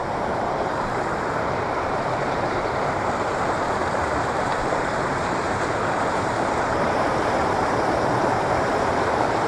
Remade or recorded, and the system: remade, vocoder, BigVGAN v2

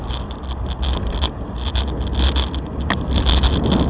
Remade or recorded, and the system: recorded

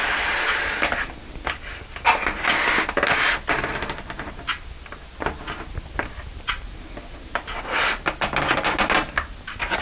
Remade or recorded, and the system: recorded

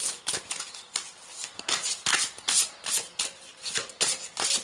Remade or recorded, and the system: recorded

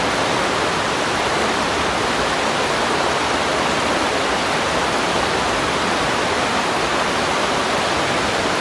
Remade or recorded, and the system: recorded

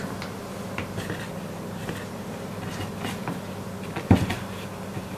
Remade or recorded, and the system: recorded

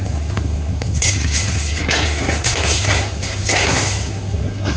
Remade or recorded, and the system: remade, codec, SNAC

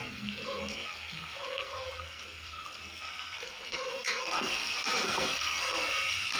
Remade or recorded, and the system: remade, codec, SNAC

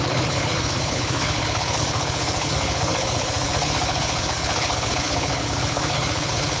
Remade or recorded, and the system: remade, codec, HILCodec